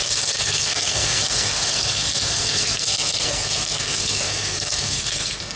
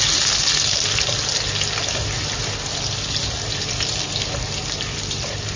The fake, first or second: first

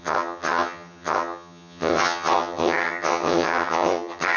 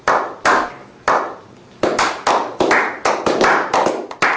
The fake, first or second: first